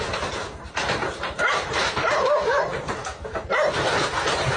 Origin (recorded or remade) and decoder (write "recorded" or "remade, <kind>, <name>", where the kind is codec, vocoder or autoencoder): remade, vocoder, BigVGAN v2